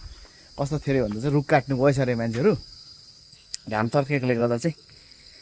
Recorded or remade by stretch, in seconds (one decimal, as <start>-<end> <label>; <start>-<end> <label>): 0.0-3.2 recorded; 3.2-5.4 remade